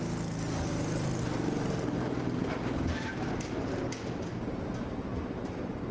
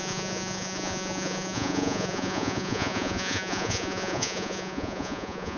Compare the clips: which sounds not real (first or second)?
second